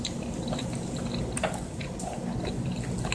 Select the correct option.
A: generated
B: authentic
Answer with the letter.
B